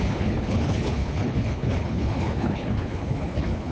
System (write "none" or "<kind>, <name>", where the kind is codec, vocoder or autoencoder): codec, HILCodec